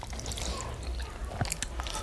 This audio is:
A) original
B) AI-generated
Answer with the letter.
A